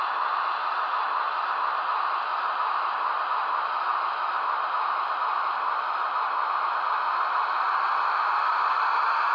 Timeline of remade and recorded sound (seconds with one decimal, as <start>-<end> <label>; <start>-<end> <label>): 0.0-9.3 recorded